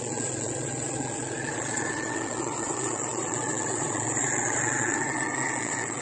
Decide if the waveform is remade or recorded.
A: remade